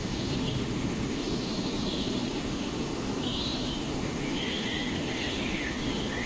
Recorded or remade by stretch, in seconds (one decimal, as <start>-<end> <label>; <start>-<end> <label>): 0.0-6.3 remade